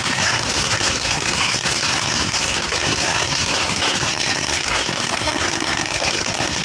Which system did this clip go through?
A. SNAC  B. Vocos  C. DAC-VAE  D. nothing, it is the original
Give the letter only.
A